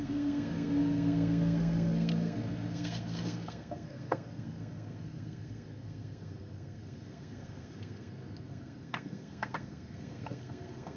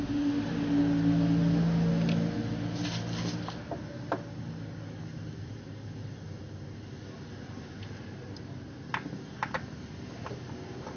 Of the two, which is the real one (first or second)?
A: second